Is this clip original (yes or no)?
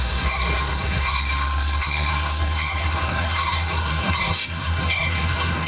no